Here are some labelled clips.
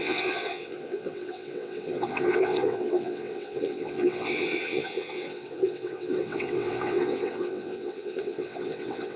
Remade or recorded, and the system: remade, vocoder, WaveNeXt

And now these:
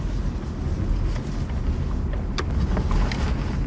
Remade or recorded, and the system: recorded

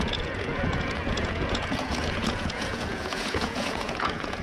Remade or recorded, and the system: remade, vocoder, Vocos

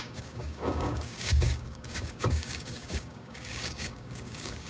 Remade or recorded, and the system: remade, codec, DAC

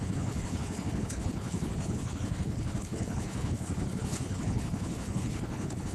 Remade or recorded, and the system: remade, codec, HILCodec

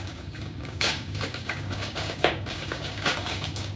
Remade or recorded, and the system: remade, codec, DAC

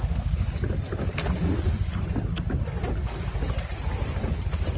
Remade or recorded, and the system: recorded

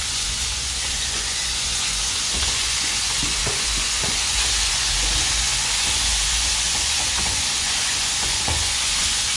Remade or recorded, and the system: remade, vocoder, Vocos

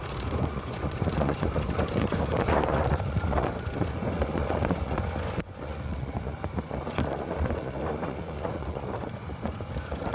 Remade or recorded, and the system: remade, vocoder, Vocos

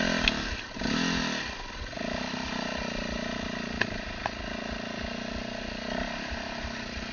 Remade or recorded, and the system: recorded